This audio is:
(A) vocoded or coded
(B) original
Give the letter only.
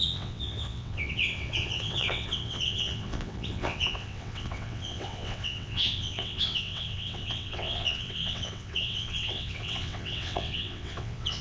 A